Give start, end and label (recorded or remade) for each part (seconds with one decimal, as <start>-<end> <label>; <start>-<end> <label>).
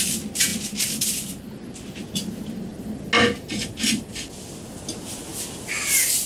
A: 0.0-6.3 recorded